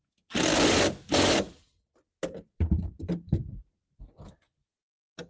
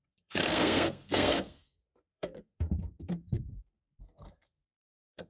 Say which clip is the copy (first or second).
second